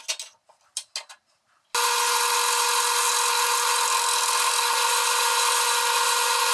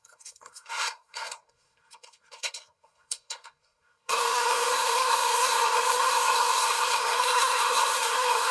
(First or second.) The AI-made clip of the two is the second